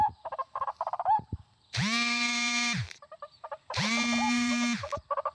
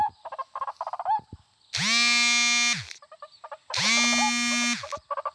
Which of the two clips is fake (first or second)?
first